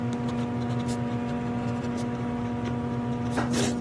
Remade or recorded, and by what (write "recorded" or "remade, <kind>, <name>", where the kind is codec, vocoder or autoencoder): recorded